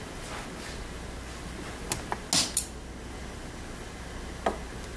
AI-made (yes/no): no